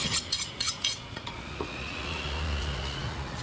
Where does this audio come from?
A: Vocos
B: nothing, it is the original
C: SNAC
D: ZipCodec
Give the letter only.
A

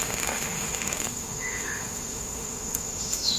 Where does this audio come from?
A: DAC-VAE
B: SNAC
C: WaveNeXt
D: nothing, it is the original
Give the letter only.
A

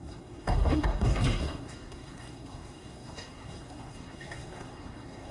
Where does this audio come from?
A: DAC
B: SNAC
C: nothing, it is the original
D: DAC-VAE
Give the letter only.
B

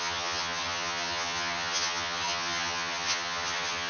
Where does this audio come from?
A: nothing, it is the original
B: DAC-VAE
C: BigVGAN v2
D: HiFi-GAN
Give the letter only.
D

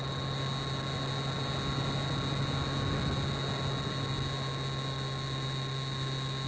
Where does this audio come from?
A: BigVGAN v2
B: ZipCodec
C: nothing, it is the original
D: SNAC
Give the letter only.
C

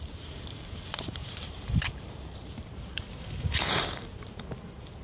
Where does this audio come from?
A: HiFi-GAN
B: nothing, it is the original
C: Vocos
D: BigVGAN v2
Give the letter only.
D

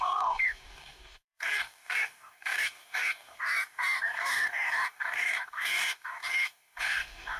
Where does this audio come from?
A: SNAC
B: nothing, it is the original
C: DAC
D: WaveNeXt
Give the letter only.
C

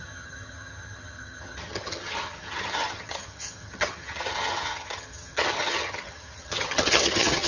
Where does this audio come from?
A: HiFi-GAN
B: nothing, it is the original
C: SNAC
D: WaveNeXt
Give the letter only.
A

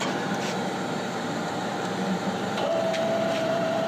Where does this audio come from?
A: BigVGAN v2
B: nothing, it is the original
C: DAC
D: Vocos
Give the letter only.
A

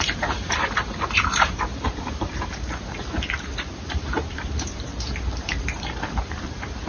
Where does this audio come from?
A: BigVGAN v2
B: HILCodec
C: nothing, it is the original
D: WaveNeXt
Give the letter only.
A